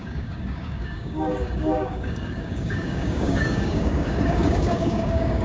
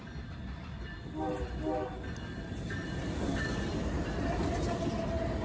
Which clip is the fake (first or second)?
first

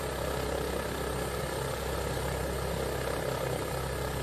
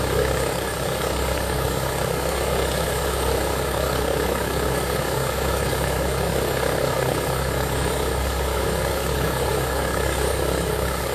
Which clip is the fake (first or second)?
second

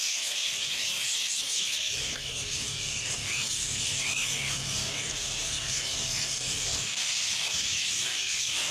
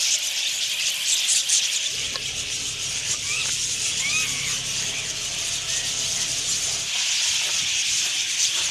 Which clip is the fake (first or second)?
first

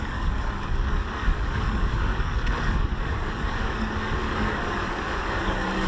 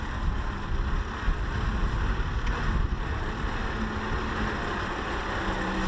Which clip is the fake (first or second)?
first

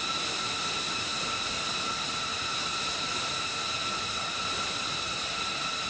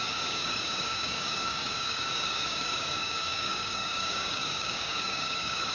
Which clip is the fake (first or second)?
second